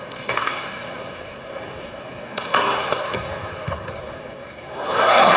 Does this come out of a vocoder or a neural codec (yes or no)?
yes